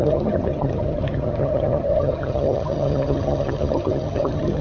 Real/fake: fake